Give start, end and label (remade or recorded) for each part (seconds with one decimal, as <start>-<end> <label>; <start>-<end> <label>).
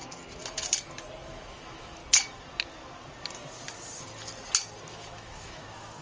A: 0.0-1.2 recorded; 1.2-2.0 remade; 2.0-4.9 recorded; 4.9-6.0 remade